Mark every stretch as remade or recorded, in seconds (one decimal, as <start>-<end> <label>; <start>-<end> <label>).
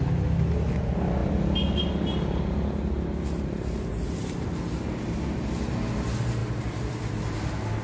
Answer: 0.0-7.8 recorded